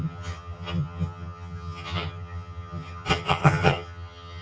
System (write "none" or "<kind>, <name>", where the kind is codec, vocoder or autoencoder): vocoder, HiFi-GAN